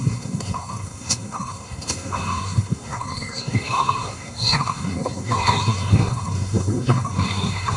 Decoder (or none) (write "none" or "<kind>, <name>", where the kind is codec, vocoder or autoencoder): codec, SNAC